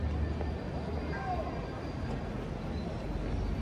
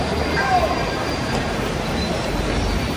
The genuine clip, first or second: first